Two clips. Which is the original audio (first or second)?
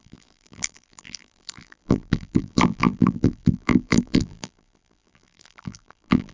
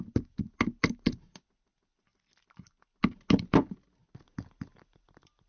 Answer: second